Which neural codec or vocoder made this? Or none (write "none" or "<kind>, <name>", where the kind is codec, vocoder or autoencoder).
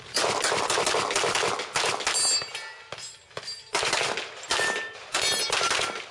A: none